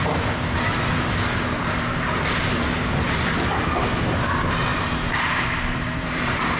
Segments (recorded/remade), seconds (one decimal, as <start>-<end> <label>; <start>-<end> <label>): 0.0-1.6 recorded; 1.6-2.4 remade; 2.4-4.7 recorded; 4.7-6.6 remade